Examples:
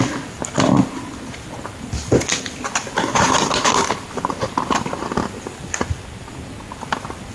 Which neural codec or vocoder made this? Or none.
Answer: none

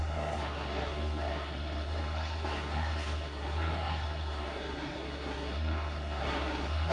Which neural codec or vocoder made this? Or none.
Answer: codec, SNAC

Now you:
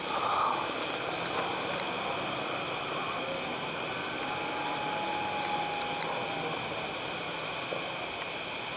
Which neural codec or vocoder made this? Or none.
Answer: none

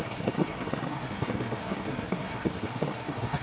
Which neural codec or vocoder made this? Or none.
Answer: codec, SNAC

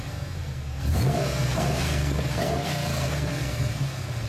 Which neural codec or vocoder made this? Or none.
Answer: codec, SNAC